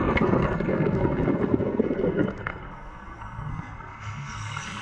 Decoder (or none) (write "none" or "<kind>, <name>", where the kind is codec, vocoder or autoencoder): codec, SNAC